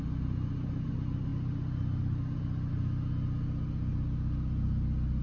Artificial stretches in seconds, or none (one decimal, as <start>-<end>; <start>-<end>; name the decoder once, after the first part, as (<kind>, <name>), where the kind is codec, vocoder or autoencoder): none